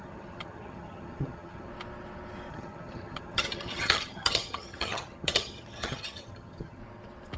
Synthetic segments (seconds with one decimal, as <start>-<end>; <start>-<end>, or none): 0.0-1.7; 2.5-6.8